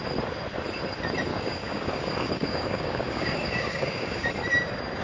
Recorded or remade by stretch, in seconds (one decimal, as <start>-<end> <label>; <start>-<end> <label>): 0.0-1.3 recorded; 1.3-4.3 remade; 4.3-5.0 recorded